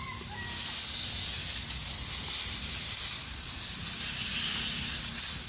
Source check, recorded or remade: recorded